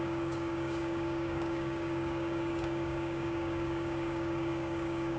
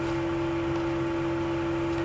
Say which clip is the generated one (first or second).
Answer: first